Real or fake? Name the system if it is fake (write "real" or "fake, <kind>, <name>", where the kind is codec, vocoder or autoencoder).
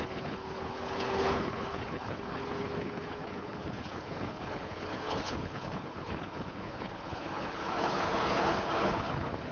fake, codec, HILCodec